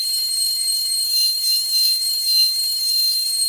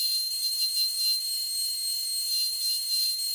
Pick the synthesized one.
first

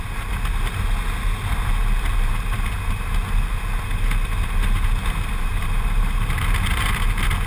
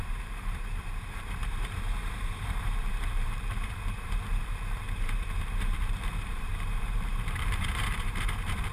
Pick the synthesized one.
second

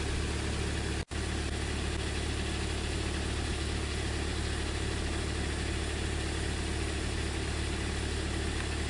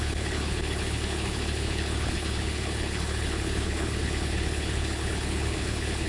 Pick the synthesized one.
second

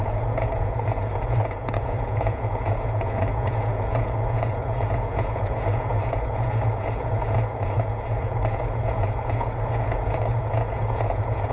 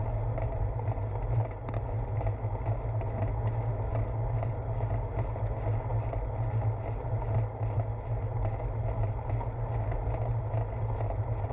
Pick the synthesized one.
first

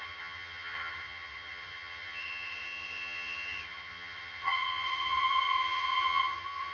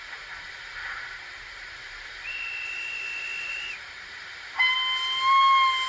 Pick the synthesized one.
first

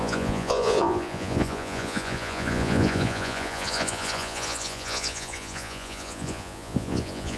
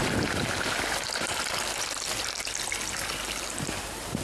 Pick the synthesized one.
first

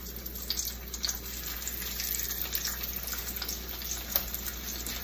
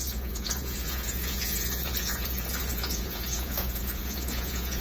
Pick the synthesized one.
second